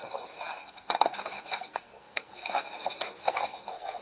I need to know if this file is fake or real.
fake